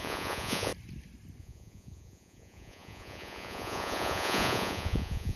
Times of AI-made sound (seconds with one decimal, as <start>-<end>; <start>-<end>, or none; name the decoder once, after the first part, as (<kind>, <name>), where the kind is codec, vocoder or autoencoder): 0.0-0.7 (vocoder, Vocos); 1.4-5.4